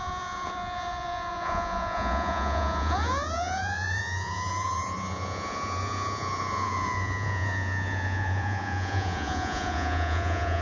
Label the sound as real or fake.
fake